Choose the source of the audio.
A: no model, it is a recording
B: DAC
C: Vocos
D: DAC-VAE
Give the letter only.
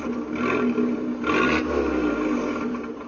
A